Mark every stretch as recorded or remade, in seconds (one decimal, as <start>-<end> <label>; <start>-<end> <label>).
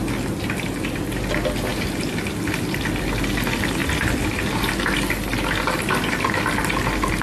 0.0-7.2 recorded